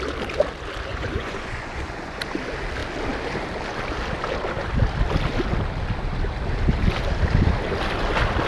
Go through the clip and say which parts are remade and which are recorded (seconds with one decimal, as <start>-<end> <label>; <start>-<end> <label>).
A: 0.0-0.9 recorded; 0.9-2.2 remade; 2.2-8.5 recorded